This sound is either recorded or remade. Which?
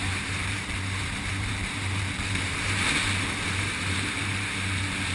remade